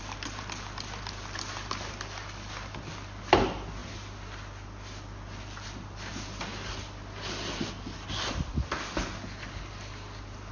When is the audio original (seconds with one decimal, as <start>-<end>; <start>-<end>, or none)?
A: 0.0-10.5